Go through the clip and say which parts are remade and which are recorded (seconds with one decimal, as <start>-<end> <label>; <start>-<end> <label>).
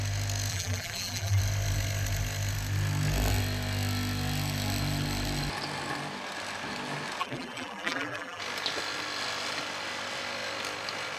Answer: 0.0-0.5 recorded; 0.5-1.4 remade; 1.4-7.2 recorded; 7.2-8.4 remade; 8.4-11.2 recorded